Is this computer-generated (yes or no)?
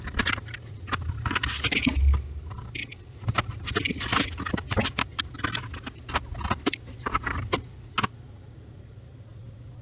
no